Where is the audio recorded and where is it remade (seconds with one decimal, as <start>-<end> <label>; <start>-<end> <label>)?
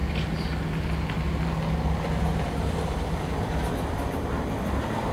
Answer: 0.0-2.3 recorded; 2.3-4.1 remade; 4.1-5.1 recorded